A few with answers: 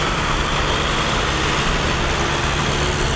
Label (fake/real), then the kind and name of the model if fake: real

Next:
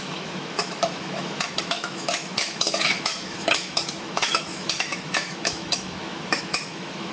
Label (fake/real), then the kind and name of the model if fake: fake, autoencoder, DAC-VAE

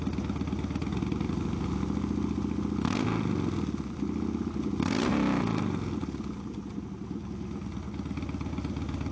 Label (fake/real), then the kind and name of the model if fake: real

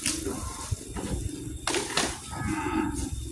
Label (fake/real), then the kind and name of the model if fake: real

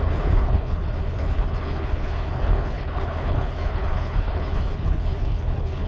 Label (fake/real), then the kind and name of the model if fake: fake, codec, HILCodec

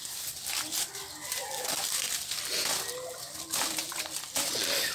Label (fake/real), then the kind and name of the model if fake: real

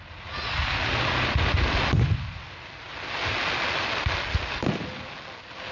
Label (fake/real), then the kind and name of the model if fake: real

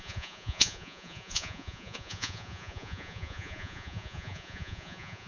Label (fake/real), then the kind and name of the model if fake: fake, vocoder, Vocos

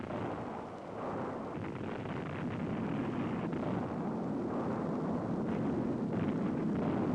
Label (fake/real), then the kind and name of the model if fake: real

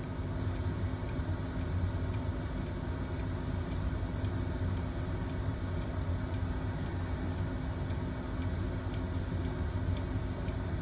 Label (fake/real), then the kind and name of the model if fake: real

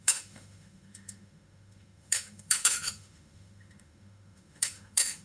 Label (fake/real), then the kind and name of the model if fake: fake, autoencoder, DAC-VAE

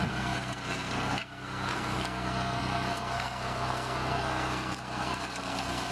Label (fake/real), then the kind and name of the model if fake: fake, codec, SNAC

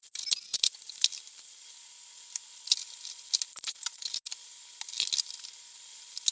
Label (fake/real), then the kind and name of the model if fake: real